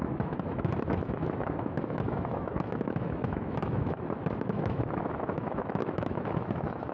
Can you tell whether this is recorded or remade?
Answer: remade